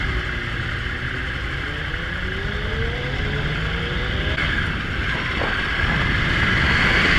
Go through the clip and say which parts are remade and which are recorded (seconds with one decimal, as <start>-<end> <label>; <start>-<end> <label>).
0.0-7.2 recorded